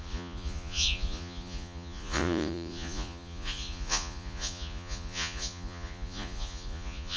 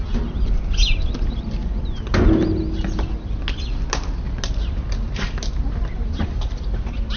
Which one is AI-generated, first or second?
first